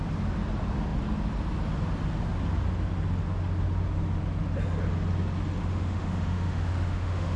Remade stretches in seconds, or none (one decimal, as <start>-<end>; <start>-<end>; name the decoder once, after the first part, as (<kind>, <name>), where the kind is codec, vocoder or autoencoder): 5.6-7.4 (autoencoder, DAC-VAE)